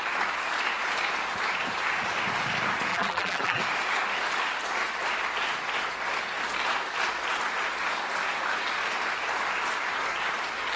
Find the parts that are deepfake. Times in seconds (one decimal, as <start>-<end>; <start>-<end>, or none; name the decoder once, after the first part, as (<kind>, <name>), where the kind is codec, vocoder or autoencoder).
2.9-3.6 (vocoder, BigVGAN v2)